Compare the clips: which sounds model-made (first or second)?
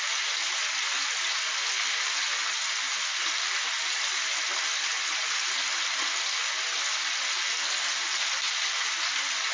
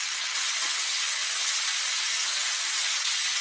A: second